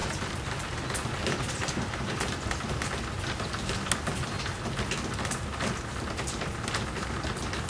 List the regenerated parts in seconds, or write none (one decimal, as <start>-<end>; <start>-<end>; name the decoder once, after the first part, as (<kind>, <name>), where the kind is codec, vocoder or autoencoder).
none